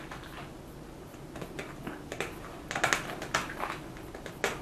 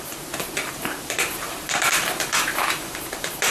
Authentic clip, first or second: first